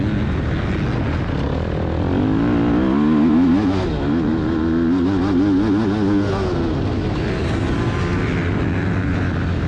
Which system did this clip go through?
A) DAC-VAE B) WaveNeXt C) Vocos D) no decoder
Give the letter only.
D